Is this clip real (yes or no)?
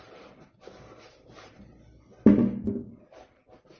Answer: yes